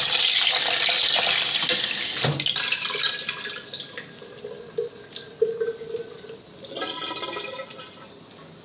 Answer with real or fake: real